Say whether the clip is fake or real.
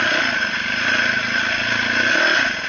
real